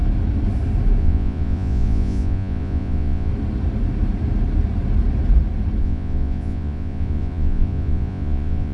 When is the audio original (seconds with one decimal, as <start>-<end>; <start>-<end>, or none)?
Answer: 0.0-1.0; 3.3-5.8